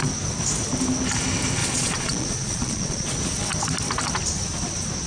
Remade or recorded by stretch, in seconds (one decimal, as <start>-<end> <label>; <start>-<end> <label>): 0.0-1.6 recorded; 1.6-3.2 remade; 3.2-5.1 recorded